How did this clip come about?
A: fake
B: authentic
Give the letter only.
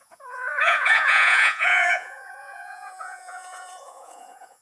A